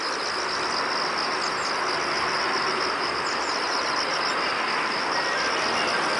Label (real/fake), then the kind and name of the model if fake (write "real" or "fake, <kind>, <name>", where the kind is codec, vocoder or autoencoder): real